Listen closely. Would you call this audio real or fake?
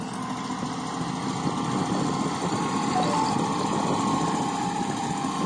real